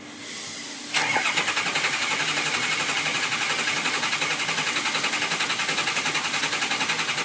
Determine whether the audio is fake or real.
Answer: real